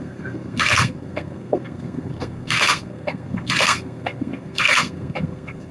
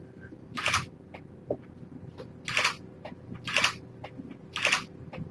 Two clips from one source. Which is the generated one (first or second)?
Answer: first